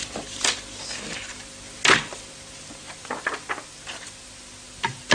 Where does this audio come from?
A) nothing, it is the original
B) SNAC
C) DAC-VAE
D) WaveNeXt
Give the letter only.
A